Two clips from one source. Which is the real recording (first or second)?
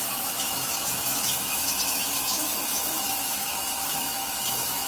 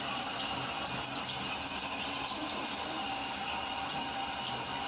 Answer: second